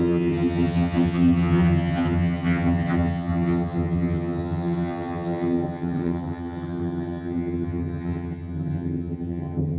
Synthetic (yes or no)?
yes